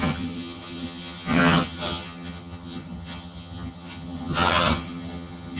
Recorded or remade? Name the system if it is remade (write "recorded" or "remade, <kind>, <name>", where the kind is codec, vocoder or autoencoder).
remade, vocoder, HiFi-GAN